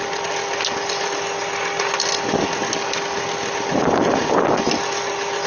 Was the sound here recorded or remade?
recorded